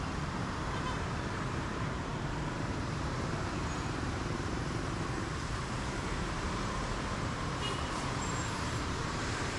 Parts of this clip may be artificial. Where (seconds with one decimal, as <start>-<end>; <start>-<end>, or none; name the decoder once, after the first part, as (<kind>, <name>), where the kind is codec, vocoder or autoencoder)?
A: 0.0-9.6 (vocoder, BigVGAN v2)